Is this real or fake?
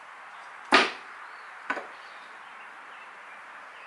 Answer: real